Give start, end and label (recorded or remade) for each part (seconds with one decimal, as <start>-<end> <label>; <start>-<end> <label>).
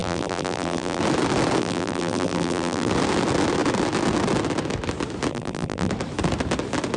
0.0-1.0 remade; 1.0-1.6 recorded; 1.6-2.9 remade; 2.9-5.3 recorded; 5.3-5.9 remade; 5.9-7.0 recorded